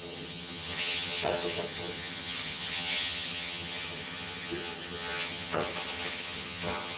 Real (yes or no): no